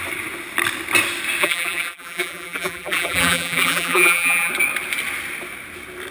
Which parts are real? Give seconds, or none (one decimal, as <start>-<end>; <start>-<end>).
0.0-1.4; 4.5-6.1